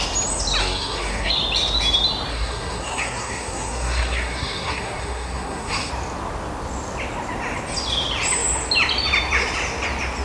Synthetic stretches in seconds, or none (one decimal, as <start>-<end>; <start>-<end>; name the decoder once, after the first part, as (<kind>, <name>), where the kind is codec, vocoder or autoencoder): 0.6-1.3 (codec, SNAC); 2.3-5.9